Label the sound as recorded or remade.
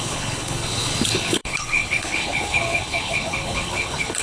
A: remade